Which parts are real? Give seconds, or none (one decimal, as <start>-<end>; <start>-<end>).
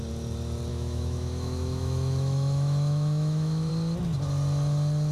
0.0-0.7; 3.7-5.1